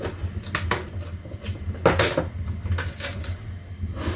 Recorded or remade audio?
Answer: recorded